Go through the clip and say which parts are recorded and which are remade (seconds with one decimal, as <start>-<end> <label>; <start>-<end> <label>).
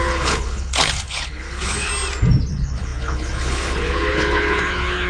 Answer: 0.0-1.9 remade; 1.9-2.5 recorded; 2.5-5.1 remade